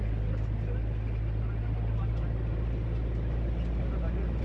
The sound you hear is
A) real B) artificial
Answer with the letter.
A